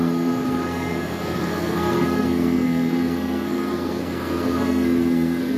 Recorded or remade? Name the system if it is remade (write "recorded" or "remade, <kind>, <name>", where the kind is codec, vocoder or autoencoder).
remade, codec, SNAC